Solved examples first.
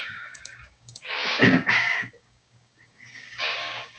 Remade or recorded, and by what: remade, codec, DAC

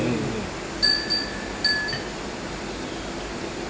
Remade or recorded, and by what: recorded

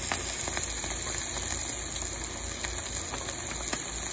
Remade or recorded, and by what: recorded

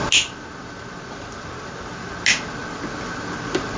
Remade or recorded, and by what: recorded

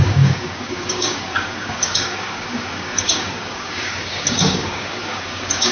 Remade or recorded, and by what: remade, codec, DAC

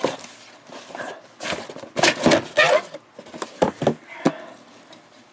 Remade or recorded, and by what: recorded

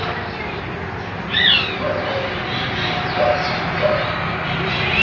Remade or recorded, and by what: recorded